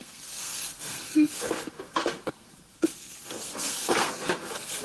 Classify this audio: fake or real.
fake